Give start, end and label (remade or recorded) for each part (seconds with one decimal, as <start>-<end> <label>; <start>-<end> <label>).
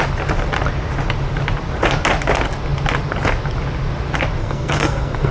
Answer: 0.0-4.4 recorded; 4.4-5.3 remade